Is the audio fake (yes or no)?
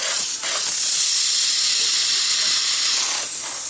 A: no